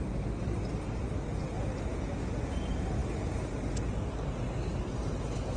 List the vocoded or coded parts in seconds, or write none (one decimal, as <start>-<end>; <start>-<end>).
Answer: none